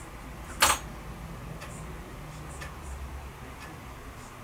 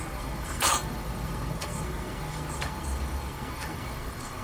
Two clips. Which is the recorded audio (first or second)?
first